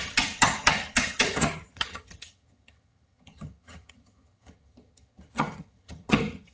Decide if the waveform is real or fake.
fake